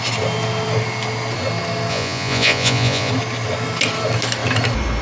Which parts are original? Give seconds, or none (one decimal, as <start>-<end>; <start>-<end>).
0.0-1.9; 3.1-5.0